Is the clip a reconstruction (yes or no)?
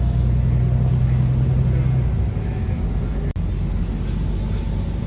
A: no